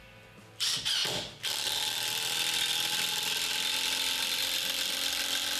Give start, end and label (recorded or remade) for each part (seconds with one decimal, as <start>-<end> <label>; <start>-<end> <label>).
0.0-5.6 recorded